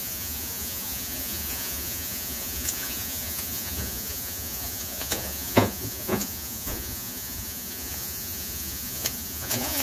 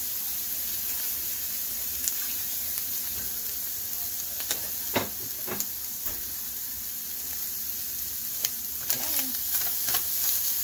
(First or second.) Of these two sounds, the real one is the second